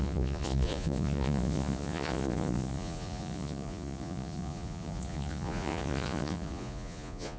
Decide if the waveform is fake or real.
fake